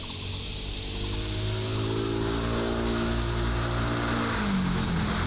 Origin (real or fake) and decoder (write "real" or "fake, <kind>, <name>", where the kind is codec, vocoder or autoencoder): real